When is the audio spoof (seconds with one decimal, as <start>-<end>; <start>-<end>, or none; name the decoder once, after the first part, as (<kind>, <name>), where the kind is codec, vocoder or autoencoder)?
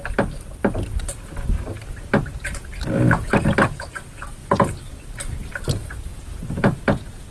none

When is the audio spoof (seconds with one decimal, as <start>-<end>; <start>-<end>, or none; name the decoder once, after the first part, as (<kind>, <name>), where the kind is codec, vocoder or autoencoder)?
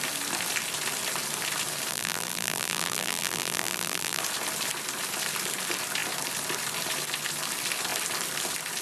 1.9-4.2 (vocoder, BigVGAN v2)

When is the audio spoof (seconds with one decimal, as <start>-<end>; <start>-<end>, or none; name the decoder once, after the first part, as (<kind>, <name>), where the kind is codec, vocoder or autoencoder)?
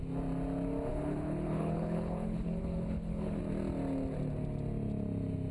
0.9-3.4 (codec, HILCodec)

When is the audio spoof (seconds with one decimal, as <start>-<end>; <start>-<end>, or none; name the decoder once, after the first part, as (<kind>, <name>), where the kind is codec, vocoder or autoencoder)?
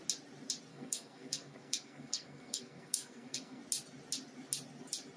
0.7-3.6 (codec, SNAC)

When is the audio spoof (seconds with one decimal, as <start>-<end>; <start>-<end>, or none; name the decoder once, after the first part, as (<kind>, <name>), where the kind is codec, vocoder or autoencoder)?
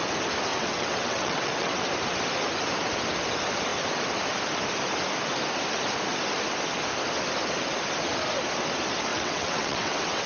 0.5-1.8 (vocoder, WaveNeXt); 9.1-10.3